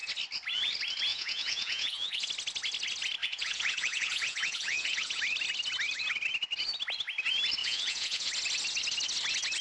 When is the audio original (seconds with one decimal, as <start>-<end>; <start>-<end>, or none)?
0.0-1.1; 2.3-3.2; 5.2-7.6; 8.3-9.6